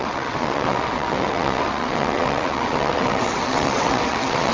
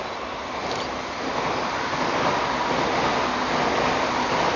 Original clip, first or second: second